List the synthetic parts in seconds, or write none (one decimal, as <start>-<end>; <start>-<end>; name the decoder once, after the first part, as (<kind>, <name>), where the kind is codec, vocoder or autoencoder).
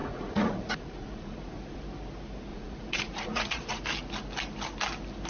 0.0-1.8 (vocoder, Vocos); 2.5-3.8